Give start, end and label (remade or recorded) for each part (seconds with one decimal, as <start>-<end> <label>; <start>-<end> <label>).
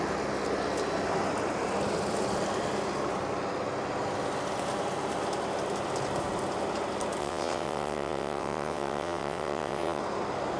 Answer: 0.0-7.2 recorded; 7.2-10.0 remade; 10.0-10.6 recorded